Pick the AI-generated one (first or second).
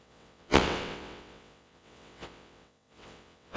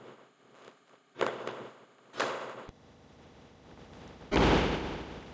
first